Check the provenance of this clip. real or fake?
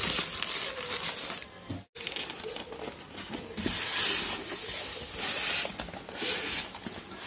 real